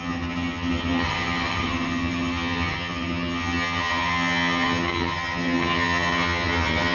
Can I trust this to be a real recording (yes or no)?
no